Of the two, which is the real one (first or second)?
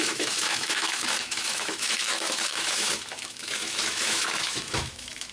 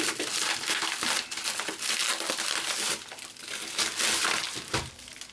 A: second